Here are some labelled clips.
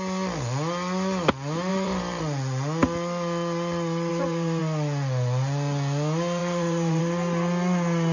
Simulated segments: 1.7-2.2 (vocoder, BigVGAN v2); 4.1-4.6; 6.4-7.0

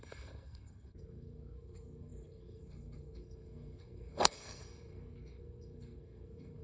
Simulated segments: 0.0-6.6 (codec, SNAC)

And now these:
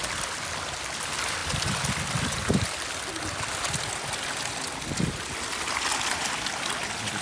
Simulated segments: none

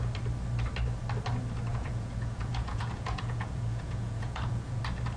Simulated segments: 1.7-4.8 (vocoder, Vocos)

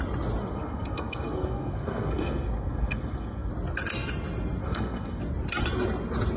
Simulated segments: 0.4-3.5 (codec, SNAC); 4.6-5.2